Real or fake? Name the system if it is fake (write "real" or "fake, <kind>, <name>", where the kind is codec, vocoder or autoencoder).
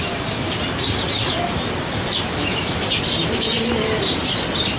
real